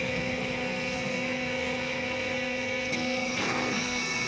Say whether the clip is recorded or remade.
remade